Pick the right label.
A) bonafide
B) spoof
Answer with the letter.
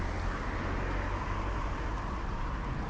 A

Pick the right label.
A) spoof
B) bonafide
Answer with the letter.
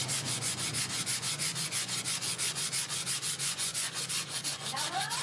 A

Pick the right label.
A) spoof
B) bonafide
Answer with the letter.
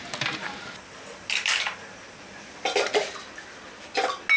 B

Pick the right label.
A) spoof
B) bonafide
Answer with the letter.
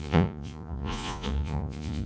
A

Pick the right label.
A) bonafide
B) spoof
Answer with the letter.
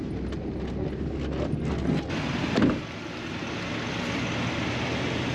A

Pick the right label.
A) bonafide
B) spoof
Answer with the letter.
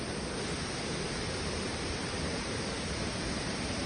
A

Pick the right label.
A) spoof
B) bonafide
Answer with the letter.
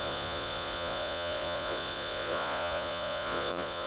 A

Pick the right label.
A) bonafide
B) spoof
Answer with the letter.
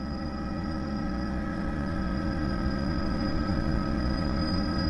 B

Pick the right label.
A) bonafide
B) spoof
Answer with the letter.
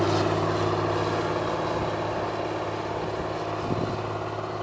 A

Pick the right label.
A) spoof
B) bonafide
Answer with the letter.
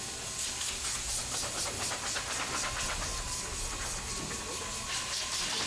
B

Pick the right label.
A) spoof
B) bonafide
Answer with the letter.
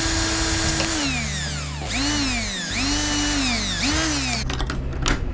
B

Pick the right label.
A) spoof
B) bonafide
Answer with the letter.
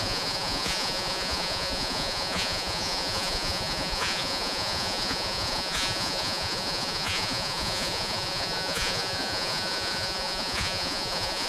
A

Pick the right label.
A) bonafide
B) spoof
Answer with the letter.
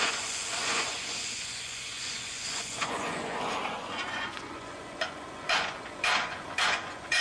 B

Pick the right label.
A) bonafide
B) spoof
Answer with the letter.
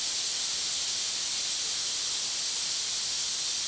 A